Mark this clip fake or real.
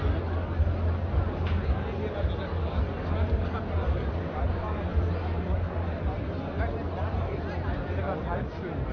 real